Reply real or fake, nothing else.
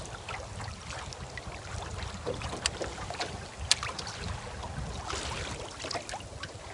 real